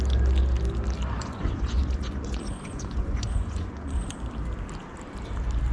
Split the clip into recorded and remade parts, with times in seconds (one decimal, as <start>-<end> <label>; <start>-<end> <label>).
0.0-1.2 recorded; 1.2-4.1 remade; 4.1-5.7 recorded